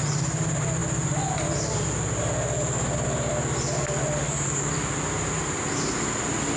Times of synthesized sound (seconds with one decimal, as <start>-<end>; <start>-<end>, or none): none